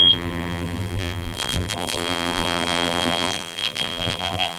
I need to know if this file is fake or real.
fake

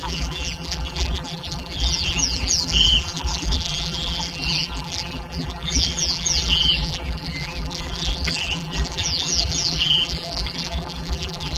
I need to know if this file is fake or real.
fake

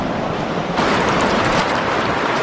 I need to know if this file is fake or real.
fake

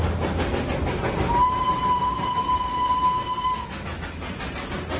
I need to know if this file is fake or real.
real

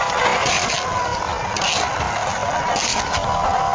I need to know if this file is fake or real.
real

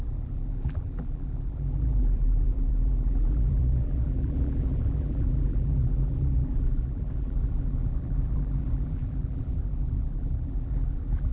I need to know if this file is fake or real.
fake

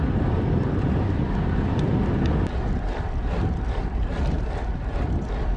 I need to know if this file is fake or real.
fake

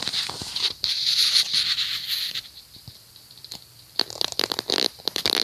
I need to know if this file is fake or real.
fake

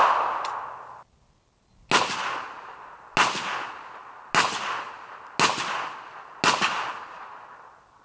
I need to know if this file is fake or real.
real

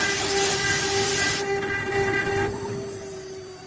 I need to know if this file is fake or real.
fake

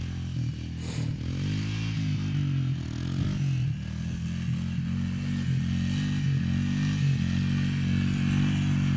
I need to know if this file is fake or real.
real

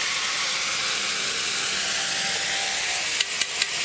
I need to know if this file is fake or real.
real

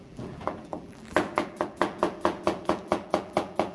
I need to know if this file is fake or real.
fake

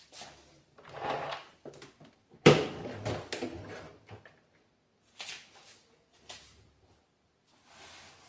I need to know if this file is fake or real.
real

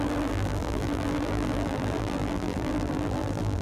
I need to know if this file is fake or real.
fake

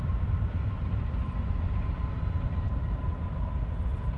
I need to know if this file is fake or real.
real